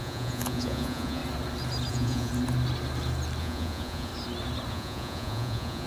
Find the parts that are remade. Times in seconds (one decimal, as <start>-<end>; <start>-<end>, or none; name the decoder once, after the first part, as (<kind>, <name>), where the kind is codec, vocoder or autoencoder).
0.0-1.2 (vocoder, Vocos); 1.9-2.3; 3.4-4.1; 4.7-5.9